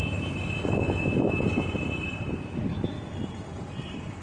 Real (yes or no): yes